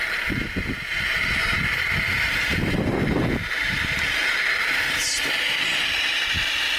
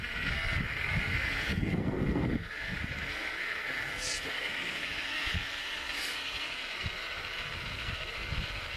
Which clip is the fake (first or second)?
second